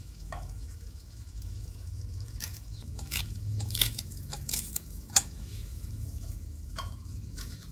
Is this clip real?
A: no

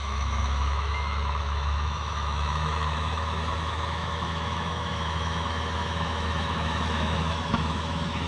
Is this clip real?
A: no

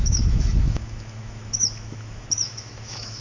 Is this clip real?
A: no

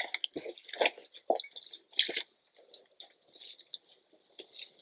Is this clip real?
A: yes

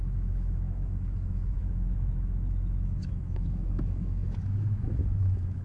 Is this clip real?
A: no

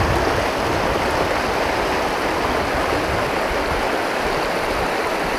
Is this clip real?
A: yes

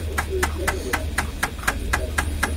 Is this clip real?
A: yes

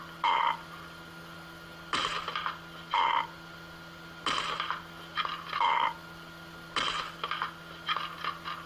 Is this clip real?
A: yes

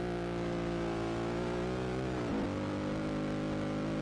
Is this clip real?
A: yes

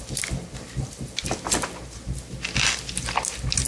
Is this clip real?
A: yes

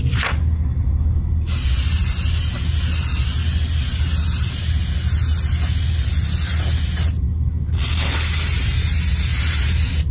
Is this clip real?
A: yes